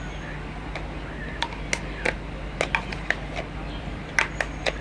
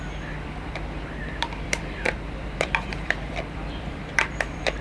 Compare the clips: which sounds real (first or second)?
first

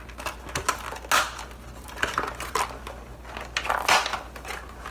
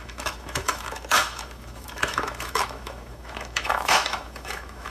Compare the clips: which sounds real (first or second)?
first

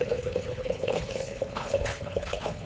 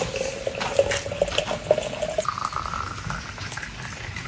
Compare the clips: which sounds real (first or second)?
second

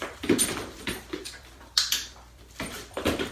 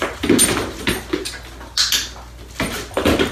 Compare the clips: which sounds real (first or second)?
second